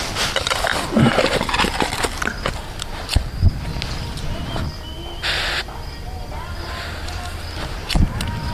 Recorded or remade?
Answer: recorded